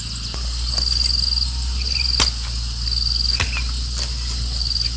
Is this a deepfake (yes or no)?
no